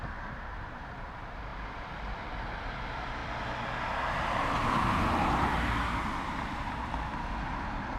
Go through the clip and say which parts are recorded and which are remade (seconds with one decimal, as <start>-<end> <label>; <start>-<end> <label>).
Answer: 0.0-1.5 remade; 1.5-2.6 recorded; 2.6-3.2 remade; 3.2-4.1 recorded; 4.1-5.5 remade; 5.5-6.2 recorded; 6.2-8.0 remade